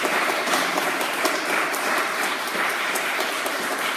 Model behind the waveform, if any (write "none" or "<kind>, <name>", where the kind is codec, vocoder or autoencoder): vocoder, BigVGAN v2